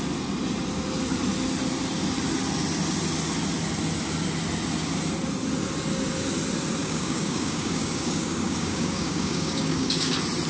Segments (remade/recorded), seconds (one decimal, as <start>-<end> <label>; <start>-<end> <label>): 0.0-6.8 recorded; 6.8-10.1 remade; 10.1-10.5 recorded